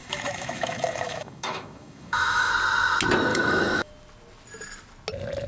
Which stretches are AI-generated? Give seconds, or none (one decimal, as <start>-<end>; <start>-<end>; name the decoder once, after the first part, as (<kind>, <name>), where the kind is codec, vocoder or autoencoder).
0.0-2.5 (autoencoder, DAC-VAE); 3.3-3.9